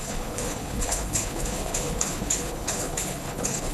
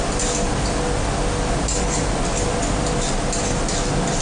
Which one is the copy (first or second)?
first